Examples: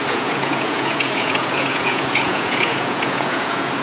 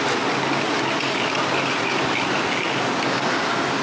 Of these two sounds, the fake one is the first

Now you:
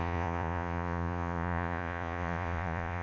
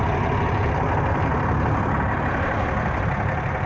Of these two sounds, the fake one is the first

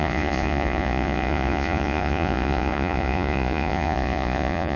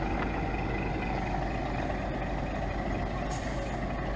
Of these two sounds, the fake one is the first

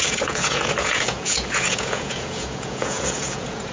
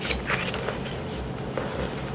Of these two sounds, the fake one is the first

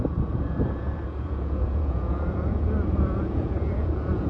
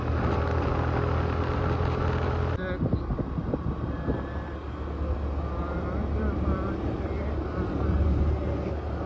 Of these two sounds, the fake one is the first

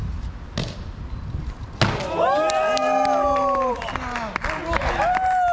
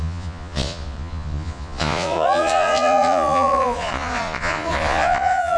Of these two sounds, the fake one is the second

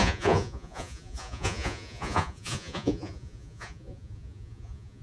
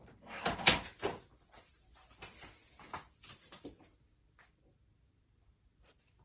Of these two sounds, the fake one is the first